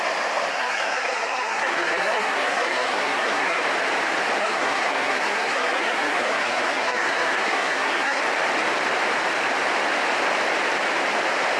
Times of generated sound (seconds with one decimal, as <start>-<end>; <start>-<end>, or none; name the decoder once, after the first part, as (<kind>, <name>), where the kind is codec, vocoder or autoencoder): 0.5-3.6 (codec, SNAC); 4.4-8.2